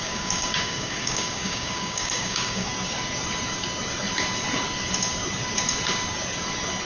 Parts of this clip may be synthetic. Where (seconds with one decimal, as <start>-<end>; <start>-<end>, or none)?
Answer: 0.0-2.7